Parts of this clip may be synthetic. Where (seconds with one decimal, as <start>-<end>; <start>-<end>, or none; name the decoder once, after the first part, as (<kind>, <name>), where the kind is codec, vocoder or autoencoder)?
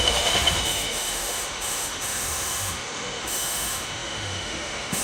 0.0-5.0 (autoencoder, DAC-VAE)